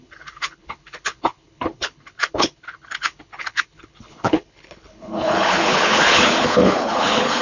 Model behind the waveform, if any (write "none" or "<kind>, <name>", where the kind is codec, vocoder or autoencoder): codec, HILCodec